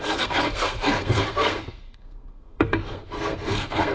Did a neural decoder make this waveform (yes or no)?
yes